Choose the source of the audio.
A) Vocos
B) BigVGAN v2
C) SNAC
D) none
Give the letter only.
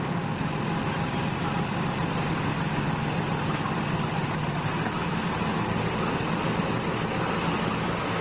D